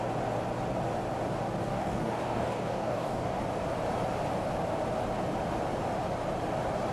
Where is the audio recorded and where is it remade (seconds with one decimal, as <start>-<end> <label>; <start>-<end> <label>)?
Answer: 0.0-1.6 recorded; 1.6-3.4 remade; 3.4-6.9 recorded